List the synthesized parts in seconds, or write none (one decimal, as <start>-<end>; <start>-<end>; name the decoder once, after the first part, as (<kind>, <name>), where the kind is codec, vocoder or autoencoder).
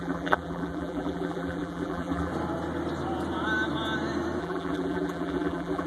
0.0-2.3 (vocoder, BigVGAN v2); 4.4-5.9